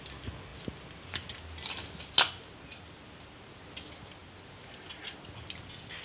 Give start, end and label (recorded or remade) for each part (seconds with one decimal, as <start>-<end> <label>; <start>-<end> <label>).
0.0-6.0 recorded

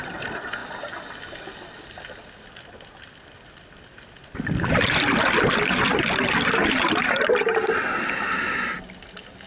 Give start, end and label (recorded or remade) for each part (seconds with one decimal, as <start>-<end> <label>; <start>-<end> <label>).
0.0-9.5 recorded

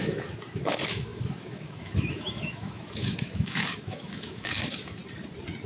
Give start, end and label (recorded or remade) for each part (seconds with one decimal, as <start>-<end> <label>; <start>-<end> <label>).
0.0-5.0 remade; 5.0-5.7 recorded

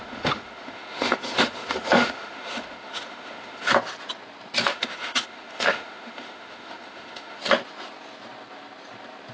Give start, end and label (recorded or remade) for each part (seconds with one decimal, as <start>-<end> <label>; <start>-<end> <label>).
0.0-3.7 remade; 3.7-4.7 recorded; 4.7-7.4 remade; 7.4-9.3 recorded

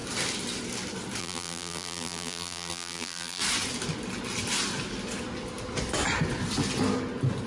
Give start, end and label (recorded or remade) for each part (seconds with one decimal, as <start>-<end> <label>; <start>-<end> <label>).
0.0-1.2 recorded; 1.2-3.4 remade; 3.4-7.5 recorded

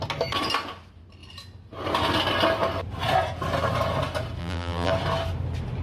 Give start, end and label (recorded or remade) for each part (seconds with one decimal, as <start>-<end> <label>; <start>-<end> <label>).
0.0-4.4 recorded; 4.4-4.9 remade; 4.9-5.8 recorded

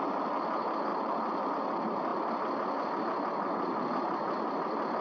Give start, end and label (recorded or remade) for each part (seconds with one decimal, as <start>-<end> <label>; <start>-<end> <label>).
0.0-0.9 recorded; 0.9-1.5 remade; 1.5-5.0 recorded

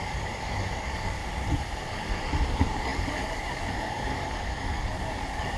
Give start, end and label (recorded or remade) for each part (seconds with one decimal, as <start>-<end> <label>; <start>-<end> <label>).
0.0-1.2 remade; 1.2-1.9 recorded; 1.9-5.6 remade